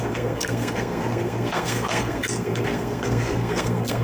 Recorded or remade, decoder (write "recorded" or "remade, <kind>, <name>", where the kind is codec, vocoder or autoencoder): remade, codec, SNAC